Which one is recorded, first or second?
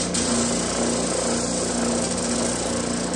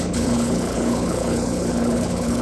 first